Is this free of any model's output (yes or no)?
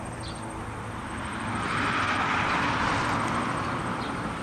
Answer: no